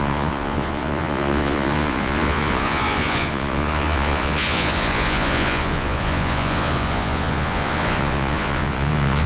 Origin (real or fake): fake